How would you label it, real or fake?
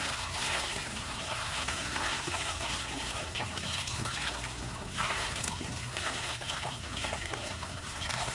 fake